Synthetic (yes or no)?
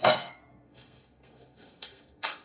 yes